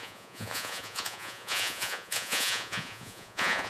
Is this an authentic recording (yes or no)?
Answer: no